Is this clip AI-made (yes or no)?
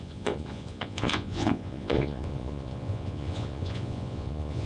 yes